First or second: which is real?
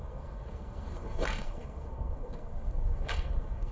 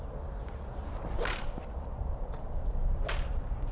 second